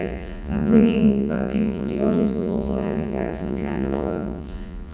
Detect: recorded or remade remade